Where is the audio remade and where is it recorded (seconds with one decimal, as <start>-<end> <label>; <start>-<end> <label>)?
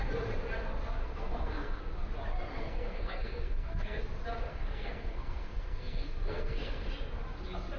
0.0-1.0 recorded; 1.0-1.8 remade; 1.8-2.5 recorded; 2.5-4.0 remade; 4.0-4.5 recorded; 4.5-6.9 remade; 6.9-7.8 recorded